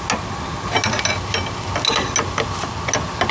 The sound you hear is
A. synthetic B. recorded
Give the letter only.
B